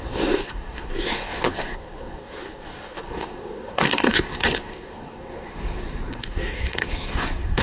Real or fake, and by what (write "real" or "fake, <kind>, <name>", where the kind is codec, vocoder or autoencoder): fake, codec, SNAC